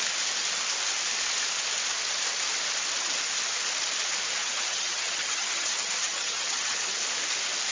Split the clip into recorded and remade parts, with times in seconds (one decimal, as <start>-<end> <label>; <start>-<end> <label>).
0.0-4.4 recorded; 4.4-7.0 remade; 7.0-7.7 recorded